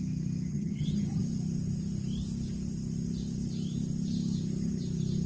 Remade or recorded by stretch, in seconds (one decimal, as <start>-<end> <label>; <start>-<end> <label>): 0.0-0.5 recorded; 0.5-1.2 remade; 1.2-5.3 recorded